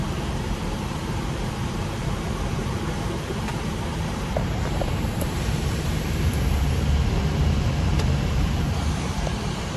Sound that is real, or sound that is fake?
fake